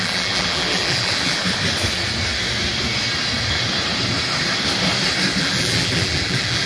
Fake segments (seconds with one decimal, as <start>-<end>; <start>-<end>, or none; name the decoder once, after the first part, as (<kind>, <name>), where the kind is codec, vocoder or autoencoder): 0.0-1.4 (vocoder, BigVGAN v2); 5.4-6.7